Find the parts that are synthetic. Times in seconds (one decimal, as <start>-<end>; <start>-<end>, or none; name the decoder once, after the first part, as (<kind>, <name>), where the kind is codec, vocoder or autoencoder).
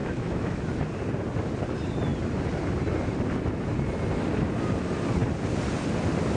0.0-0.6 (autoencoder, DAC-VAE)